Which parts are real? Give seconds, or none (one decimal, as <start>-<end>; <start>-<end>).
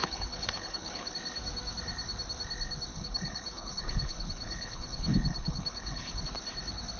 1.1-2.9; 6.2-7.0